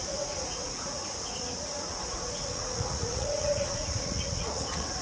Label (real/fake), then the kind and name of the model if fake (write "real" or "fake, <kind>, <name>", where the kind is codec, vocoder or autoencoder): fake, vocoder, Vocos